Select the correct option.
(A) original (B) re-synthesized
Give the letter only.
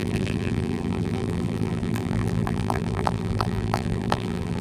B